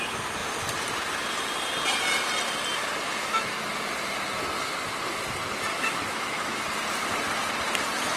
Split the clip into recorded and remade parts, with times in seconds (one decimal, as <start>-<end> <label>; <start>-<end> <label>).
0.0-3.2 recorded; 3.2-3.7 remade; 3.7-5.7 recorded; 5.7-6.6 remade; 6.6-8.2 recorded